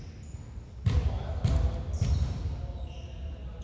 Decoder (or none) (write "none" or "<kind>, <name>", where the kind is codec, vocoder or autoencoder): none